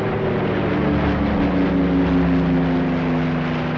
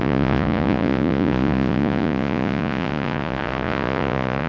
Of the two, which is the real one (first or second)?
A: first